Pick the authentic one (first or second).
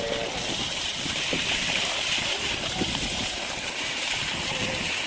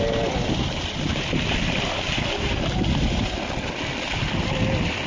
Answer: second